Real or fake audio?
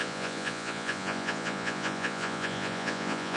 fake